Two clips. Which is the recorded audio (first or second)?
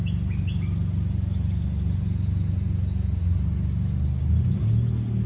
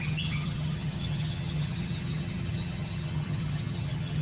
first